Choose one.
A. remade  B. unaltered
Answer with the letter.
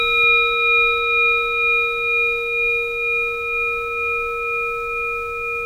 B